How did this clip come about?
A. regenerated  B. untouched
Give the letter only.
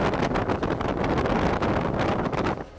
B